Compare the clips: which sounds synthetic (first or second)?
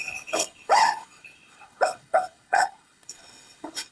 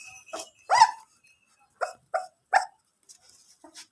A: first